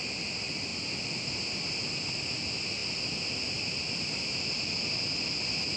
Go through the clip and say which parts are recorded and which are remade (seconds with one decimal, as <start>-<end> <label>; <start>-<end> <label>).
0.0-5.8 recorded